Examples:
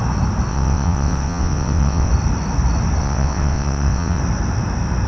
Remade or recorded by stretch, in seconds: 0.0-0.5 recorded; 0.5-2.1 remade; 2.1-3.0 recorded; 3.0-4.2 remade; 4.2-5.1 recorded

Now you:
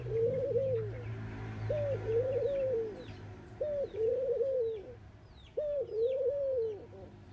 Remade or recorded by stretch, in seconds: 0.0-2.1 recorded; 2.1-6.4 remade; 6.4-7.3 recorded

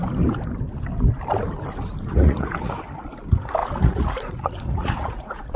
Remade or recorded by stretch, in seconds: 0.0-2.1 recorded; 2.1-2.8 remade; 2.8-3.6 recorded; 3.6-5.6 remade

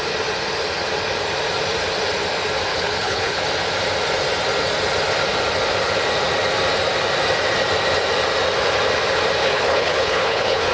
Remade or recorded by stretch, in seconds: 0.0-2.7 recorded; 2.7-3.4 remade; 3.4-9.4 recorded; 9.4-10.7 remade

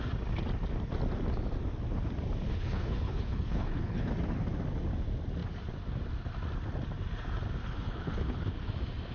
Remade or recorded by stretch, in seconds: 0.0-2.5 recorded; 2.5-4.1 remade; 4.1-7.6 recorded; 7.6-8.7 remade; 8.7-9.1 recorded